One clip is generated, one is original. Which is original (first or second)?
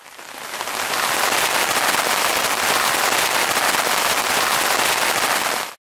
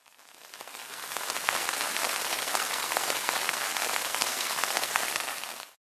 first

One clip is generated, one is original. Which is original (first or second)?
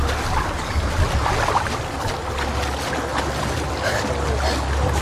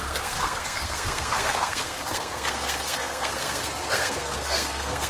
first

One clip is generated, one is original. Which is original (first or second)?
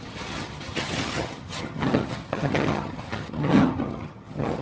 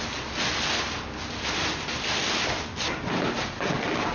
second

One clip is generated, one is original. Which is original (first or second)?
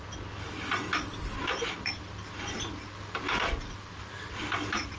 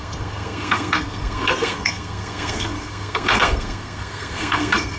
first